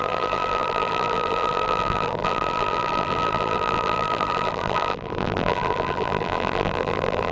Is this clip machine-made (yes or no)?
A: yes